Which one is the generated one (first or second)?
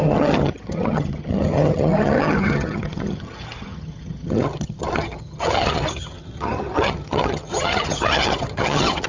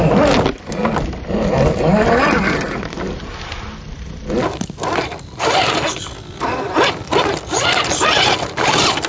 first